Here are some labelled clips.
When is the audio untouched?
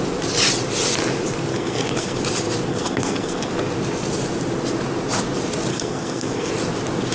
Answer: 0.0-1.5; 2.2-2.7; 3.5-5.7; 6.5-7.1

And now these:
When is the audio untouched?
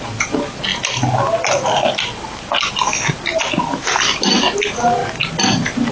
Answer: 0.0-5.9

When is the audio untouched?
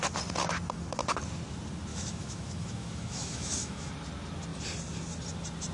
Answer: 0.0-1.9; 3.9-5.7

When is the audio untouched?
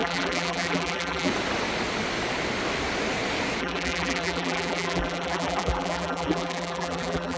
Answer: 1.3-3.6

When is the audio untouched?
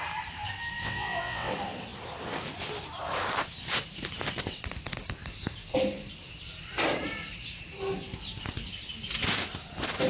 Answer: 0.0-0.8; 1.5-10.1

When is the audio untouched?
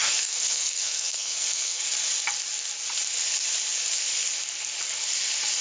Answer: 1.8-5.6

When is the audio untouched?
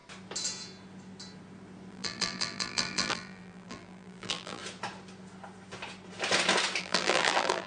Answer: 0.0-1.9; 4.6-6.8